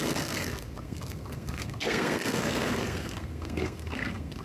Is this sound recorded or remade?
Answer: remade